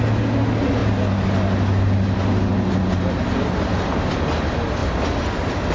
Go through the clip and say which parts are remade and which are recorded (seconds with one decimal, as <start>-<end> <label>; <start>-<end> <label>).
0.0-5.7 recorded